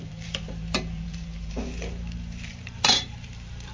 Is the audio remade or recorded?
remade